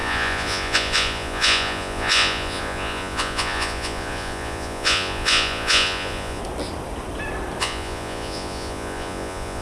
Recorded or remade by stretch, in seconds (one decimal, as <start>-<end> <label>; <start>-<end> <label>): 0.0-6.4 remade; 6.4-7.6 recorded; 7.6-9.6 remade